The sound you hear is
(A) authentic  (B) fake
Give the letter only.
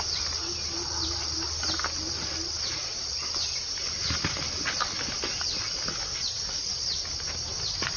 A